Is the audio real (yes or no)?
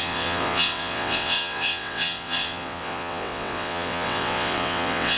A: no